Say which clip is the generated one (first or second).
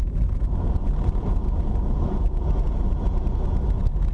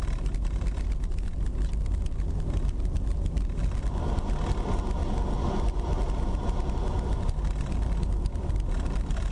first